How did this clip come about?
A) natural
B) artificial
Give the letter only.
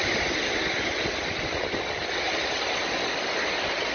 A